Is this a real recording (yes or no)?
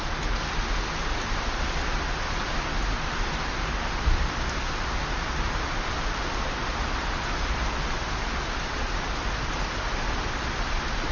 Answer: yes